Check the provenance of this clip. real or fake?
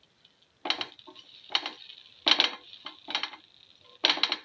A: real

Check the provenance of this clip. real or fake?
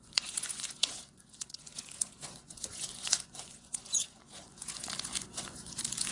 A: fake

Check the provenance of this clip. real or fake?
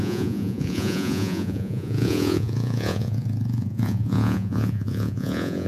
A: fake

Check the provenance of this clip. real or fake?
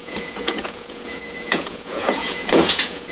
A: fake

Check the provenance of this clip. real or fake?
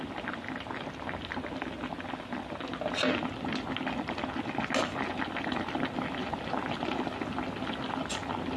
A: real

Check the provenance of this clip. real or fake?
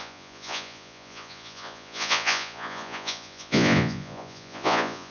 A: fake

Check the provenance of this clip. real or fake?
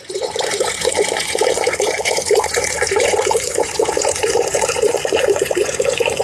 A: fake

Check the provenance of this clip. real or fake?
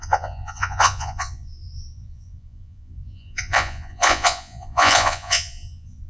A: fake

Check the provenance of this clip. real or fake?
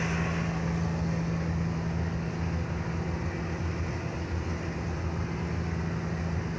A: real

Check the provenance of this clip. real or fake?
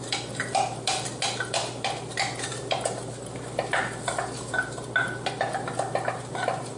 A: real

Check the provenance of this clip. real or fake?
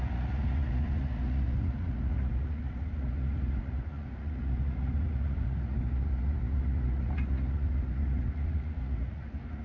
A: fake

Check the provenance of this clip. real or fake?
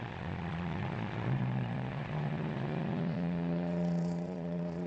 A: fake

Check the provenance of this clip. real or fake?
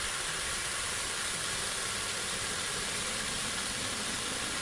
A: real